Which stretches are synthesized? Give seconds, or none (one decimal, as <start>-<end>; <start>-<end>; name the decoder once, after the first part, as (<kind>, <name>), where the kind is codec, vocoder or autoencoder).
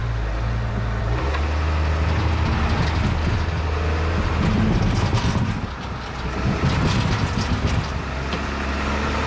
none